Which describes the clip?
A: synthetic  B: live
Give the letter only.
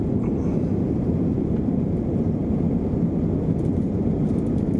B